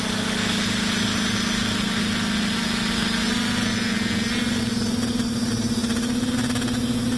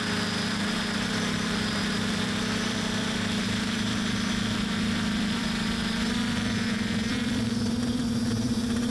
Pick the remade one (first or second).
second